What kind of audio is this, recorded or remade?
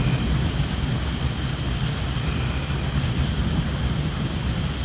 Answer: recorded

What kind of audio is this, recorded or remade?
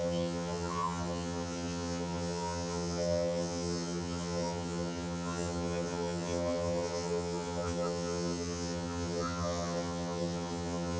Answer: remade